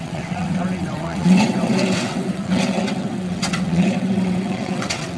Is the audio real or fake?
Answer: fake